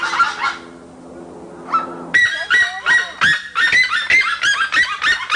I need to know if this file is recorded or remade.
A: recorded